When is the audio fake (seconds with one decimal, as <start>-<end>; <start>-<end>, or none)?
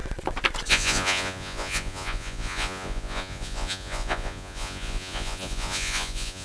0.7-6.4